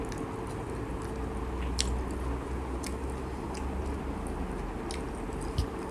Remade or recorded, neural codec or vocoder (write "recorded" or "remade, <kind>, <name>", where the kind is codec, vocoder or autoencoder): recorded